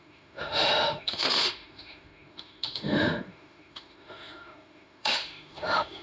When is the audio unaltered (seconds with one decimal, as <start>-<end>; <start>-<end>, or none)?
none